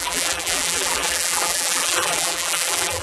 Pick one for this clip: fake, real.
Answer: fake